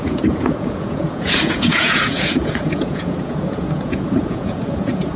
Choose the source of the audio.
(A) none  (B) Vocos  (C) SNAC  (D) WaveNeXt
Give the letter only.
B